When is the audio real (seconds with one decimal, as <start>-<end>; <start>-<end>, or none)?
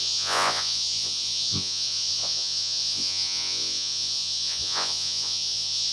none